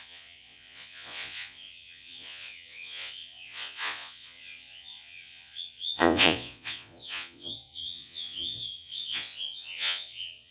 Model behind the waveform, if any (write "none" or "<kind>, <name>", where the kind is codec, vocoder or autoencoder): vocoder, Vocos